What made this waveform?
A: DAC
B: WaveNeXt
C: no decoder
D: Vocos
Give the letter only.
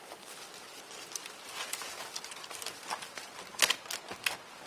C